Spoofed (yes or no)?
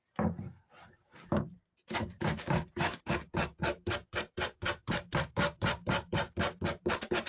yes